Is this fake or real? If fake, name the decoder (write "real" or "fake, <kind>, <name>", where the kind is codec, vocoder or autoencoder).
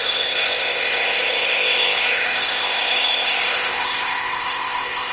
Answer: fake, codec, ZipCodec